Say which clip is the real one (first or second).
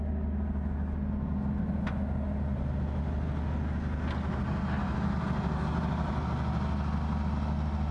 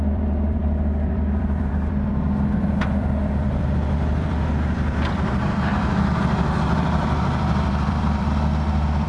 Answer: first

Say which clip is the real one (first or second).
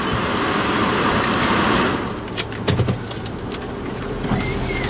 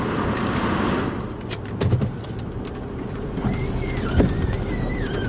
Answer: first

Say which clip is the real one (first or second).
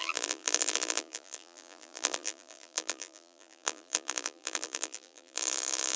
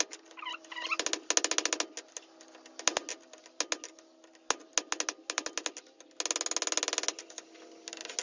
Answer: second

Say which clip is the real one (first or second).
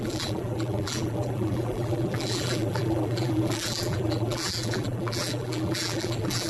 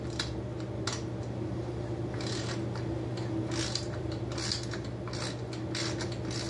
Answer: second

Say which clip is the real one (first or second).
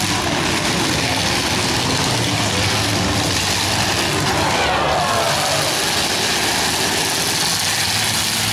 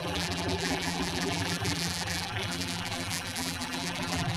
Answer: first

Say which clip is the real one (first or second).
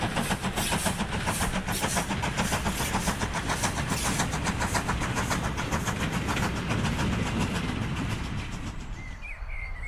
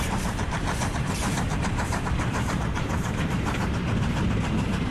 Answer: first